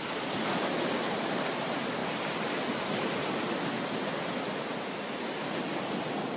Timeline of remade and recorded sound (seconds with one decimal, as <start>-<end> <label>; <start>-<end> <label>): 0.0-6.4 recorded